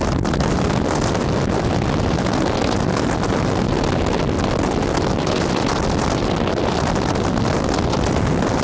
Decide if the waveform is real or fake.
real